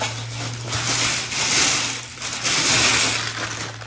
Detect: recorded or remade recorded